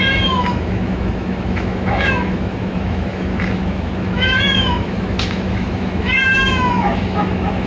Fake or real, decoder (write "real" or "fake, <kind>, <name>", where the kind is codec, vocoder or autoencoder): fake, autoencoder, DAC-VAE